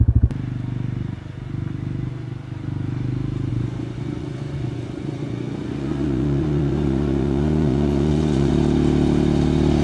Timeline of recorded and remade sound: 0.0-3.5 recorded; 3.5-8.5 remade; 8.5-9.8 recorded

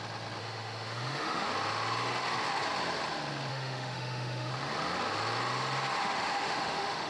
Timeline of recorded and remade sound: 0.0-0.4 recorded; 0.4-1.5 remade; 1.5-3.5 recorded; 3.5-4.5 remade; 4.5-6.0 recorded; 6.0-7.1 remade

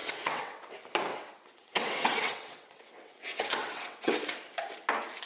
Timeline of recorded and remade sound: 0.0-0.7 remade; 0.7-1.1 recorded; 1.1-4.3 remade; 4.3-5.3 recorded

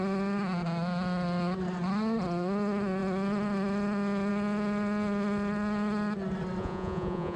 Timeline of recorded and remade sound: 0.0-6.6 recorded; 6.6-7.4 remade

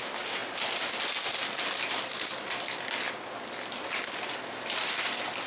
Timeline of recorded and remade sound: 0.0-5.5 recorded

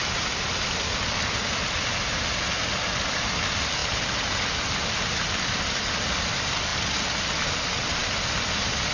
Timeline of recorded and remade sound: 0.0-8.9 recorded